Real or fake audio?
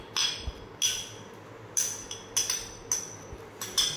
real